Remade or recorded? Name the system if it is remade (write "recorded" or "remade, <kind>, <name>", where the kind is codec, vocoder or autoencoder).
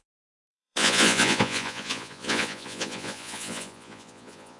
remade, vocoder, Vocos